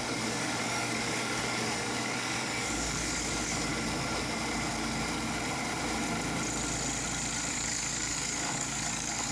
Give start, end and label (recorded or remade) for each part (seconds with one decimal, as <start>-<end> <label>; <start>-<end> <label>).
0.0-3.7 remade; 3.7-7.5 recorded; 7.5-9.3 remade